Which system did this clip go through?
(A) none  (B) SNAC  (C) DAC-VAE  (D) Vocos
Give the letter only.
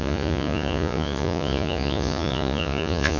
D